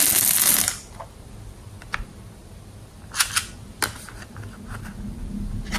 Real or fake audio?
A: real